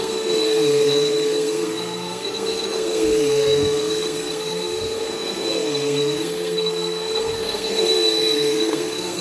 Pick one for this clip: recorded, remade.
remade